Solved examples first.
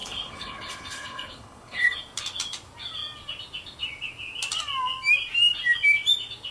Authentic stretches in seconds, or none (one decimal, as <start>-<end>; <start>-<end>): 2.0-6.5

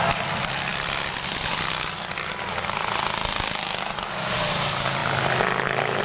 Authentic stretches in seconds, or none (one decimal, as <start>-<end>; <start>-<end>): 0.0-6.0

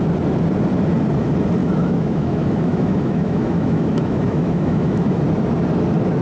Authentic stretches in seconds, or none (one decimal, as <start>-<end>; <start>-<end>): 0.0-1.6; 5.2-6.2

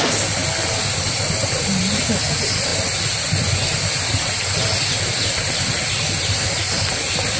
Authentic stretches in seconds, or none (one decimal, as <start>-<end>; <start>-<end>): 0.0-7.4